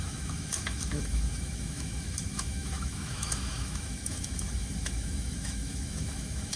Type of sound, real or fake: fake